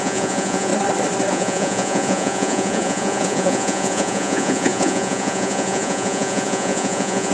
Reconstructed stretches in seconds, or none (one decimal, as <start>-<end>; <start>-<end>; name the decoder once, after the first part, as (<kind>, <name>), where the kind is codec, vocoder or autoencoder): 0.0-0.7 (vocoder, Vocos); 1.3-7.3